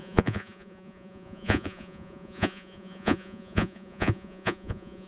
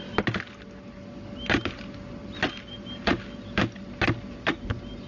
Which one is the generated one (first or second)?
first